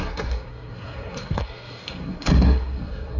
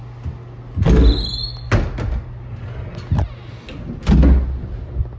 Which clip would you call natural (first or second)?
second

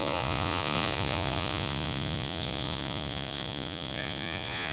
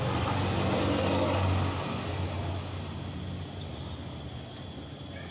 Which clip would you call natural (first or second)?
second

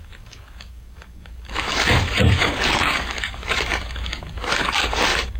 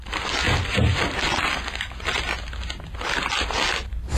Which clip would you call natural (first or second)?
second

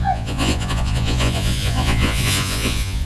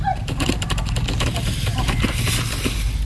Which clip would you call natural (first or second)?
second